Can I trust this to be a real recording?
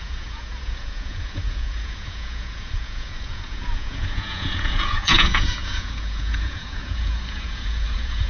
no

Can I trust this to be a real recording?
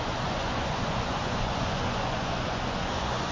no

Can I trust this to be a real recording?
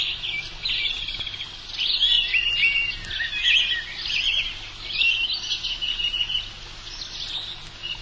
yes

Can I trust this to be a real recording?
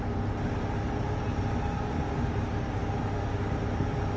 yes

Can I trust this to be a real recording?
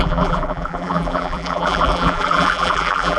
no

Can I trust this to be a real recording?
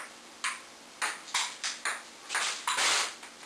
yes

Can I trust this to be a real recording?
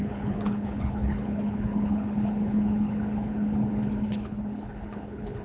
no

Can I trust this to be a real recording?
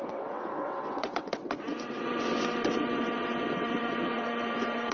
no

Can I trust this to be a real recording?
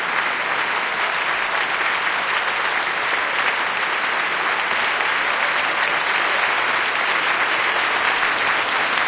yes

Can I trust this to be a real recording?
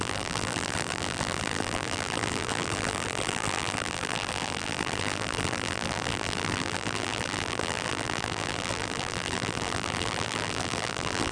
no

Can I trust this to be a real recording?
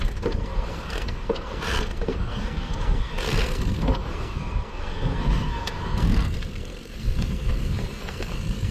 no